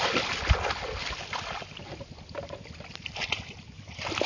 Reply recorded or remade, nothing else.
recorded